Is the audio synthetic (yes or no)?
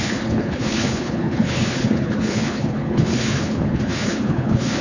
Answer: yes